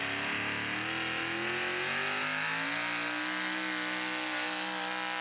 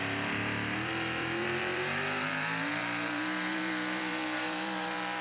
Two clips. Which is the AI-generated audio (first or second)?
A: second